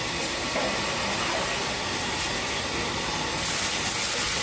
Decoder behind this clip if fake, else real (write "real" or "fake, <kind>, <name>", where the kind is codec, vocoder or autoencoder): real